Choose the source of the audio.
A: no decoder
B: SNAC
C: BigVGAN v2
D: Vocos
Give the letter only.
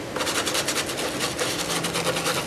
A